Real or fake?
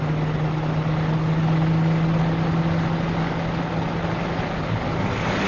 real